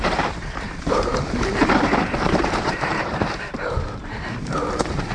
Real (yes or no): no